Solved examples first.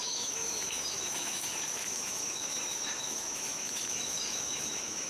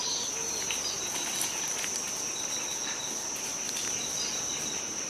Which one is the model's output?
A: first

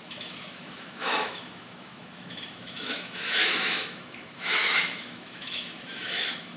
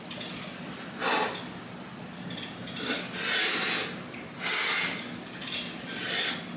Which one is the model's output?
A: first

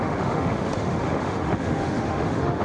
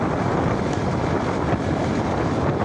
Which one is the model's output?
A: first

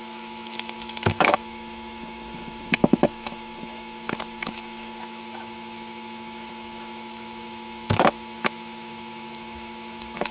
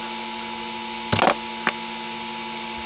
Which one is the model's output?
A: first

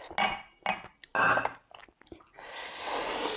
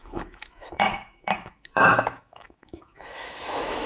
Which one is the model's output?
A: second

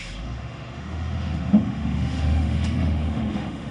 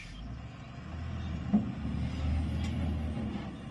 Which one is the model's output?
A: first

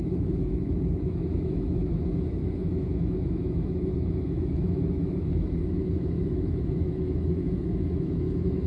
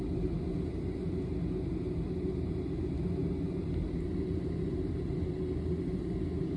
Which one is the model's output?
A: first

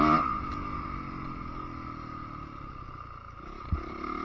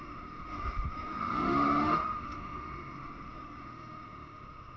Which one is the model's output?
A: second